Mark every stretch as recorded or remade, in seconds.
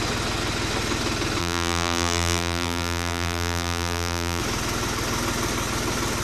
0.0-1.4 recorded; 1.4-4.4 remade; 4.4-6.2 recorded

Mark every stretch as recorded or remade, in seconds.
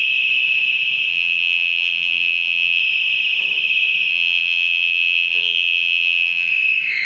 0.0-1.1 recorded; 1.1-2.8 remade; 2.8-4.1 recorded; 4.1-6.5 remade; 6.5-7.0 recorded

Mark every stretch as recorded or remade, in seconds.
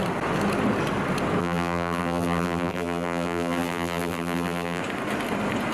0.0-1.4 recorded; 1.4-4.8 remade; 4.8-5.7 recorded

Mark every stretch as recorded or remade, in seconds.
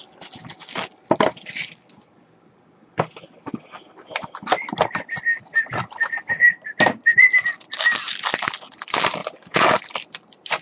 0.0-10.6 remade